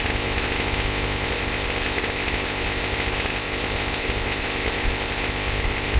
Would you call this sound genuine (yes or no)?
no